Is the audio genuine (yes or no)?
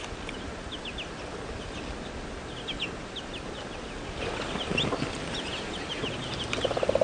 yes